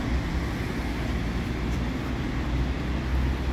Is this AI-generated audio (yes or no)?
no